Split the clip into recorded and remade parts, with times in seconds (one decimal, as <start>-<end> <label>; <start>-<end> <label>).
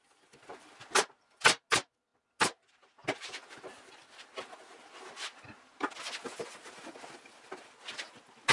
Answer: 0.0-8.5 recorded